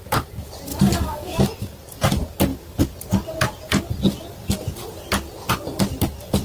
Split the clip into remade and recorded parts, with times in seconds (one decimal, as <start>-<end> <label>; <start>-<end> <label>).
0.0-0.7 recorded; 0.7-1.4 remade; 1.4-6.4 recorded